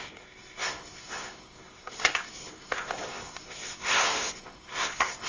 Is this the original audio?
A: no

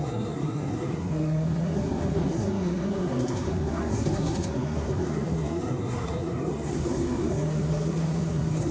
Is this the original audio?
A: no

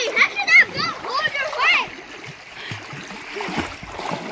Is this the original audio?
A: yes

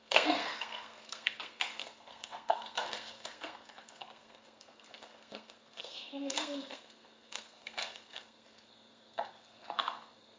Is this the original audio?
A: no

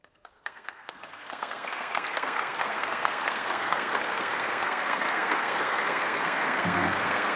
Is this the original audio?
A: no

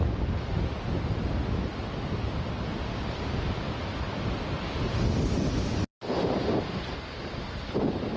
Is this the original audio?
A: yes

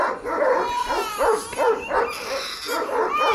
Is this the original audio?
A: yes